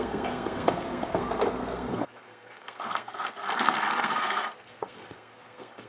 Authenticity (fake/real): fake